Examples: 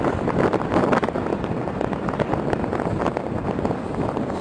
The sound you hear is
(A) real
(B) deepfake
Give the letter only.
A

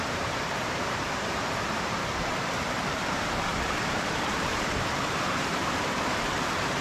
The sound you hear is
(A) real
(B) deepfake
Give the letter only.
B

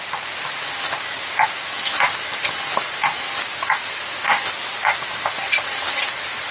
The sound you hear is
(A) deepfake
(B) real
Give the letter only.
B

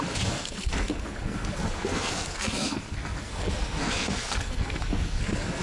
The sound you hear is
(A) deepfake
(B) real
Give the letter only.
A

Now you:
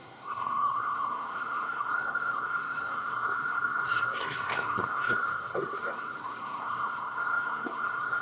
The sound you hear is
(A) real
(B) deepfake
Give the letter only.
B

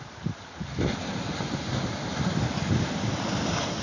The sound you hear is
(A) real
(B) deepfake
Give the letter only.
A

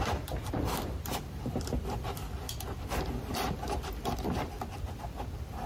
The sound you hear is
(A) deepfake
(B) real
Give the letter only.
A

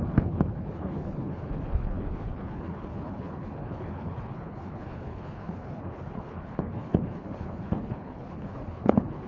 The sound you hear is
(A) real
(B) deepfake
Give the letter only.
B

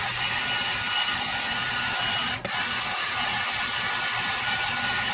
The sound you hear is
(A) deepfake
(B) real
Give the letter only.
B